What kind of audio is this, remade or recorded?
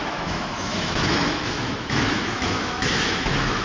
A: remade